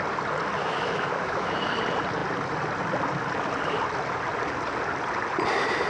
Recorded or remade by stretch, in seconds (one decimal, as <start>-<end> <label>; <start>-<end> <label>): 0.0-0.6 recorded; 0.6-1.8 remade; 1.8-5.9 recorded